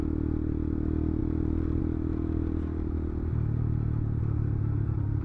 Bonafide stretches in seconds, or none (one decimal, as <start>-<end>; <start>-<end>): 0.0-5.2